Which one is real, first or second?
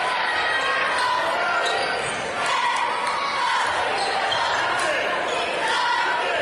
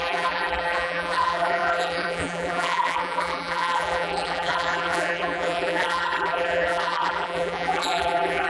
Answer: first